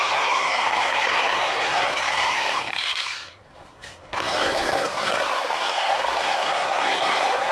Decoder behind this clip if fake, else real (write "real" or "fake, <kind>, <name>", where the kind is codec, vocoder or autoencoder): fake, codec, SNAC